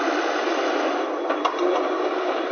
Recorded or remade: recorded